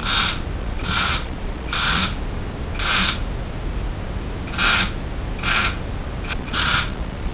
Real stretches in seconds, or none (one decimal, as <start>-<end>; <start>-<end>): 0.0-0.6; 2.0-6.3